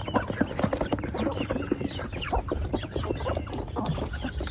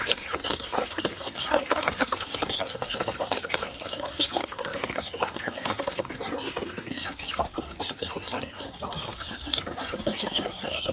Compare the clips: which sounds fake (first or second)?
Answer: second